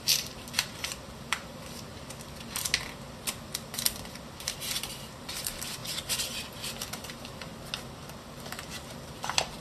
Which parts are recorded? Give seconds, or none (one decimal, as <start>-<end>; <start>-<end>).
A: 1.9-4.1; 5.8-7.0; 7.5-8.2